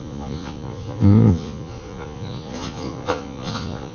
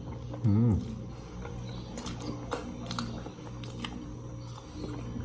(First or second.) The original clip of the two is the second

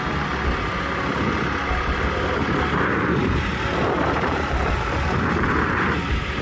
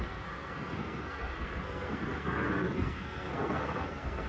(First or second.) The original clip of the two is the first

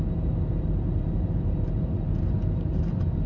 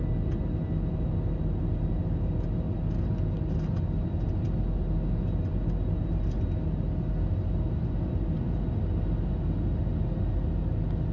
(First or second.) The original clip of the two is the second